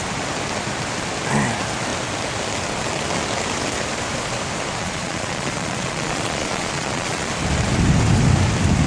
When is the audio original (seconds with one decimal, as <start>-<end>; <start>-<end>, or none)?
0.0-4.8; 7.3-8.9